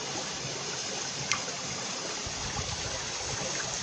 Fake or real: real